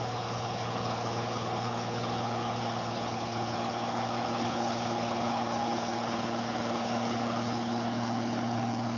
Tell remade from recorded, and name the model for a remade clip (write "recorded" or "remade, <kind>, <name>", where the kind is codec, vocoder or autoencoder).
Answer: remade, codec, HILCodec